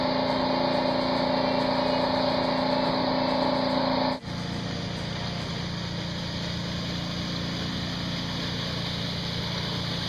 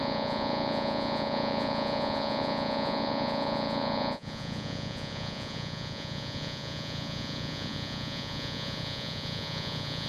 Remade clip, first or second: second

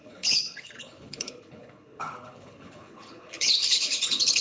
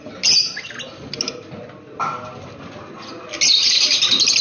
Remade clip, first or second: first